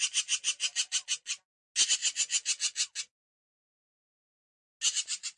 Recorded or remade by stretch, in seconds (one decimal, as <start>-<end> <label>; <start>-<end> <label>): 0.0-5.4 recorded